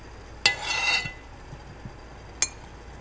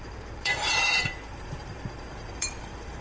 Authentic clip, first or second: first